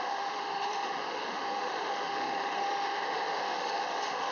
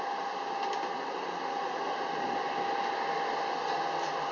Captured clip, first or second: second